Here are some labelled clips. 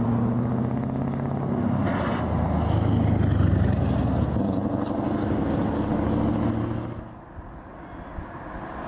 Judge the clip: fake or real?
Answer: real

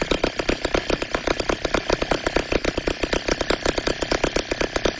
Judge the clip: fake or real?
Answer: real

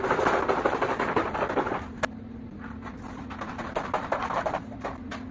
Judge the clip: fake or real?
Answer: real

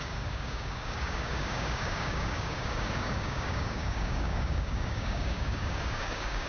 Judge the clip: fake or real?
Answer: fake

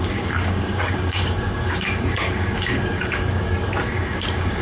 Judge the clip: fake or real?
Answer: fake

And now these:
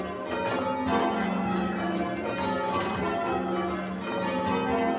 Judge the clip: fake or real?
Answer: real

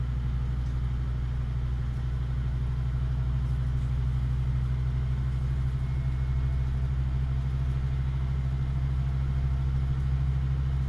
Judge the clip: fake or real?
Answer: real